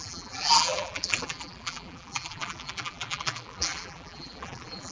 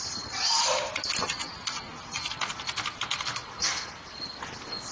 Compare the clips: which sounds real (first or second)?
second